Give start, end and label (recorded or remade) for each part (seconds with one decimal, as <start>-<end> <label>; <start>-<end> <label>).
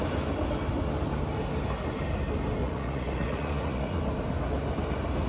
0.0-2.6 recorded; 2.6-4.0 remade; 4.0-5.3 recorded